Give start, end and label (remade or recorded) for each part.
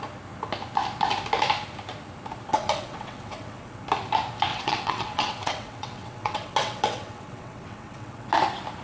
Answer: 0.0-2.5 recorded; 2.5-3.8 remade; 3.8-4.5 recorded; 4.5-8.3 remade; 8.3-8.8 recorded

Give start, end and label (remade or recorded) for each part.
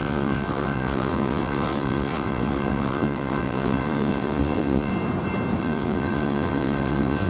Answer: 0.0-4.9 remade; 4.9-5.6 recorded; 5.6-7.3 remade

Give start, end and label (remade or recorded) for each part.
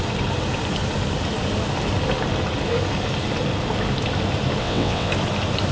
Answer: 0.0-4.6 recorded; 4.6-5.1 remade; 5.1-5.7 recorded